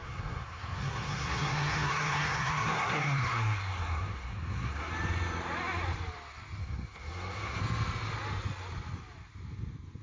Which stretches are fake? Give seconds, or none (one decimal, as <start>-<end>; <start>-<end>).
0.0-4.9; 6.6-7.6